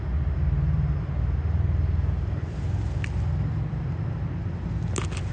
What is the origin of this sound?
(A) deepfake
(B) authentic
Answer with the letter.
B